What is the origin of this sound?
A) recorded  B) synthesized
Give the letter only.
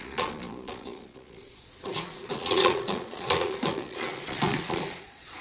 B